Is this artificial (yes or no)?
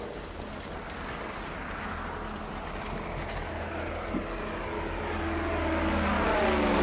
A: no